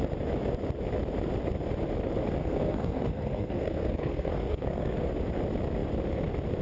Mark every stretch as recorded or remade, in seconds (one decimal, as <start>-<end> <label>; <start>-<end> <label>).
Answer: 0.0-2.4 recorded; 2.4-5.1 remade; 5.1-6.6 recorded